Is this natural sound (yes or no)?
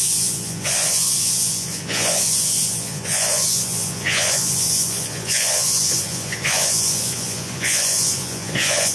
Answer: no